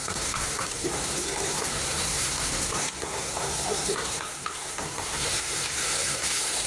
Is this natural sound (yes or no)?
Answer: no